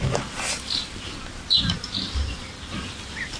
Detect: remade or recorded recorded